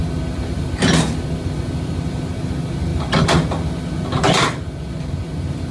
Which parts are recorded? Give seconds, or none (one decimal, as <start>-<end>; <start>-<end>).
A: 0.0-5.7